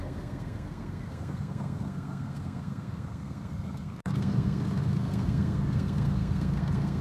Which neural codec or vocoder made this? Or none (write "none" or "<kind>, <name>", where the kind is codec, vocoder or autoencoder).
codec, SNAC